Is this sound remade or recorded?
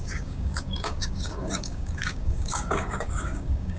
remade